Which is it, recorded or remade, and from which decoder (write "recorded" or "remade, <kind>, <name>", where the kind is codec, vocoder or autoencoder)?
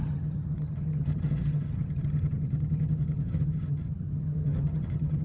remade, vocoder, HiFi-GAN